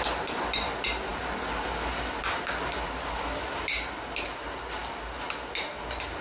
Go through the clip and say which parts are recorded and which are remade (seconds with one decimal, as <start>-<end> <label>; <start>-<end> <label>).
0.0-6.2 recorded